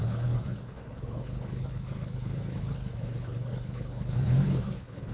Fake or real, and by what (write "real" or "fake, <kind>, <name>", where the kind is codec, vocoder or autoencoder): fake, codec, HILCodec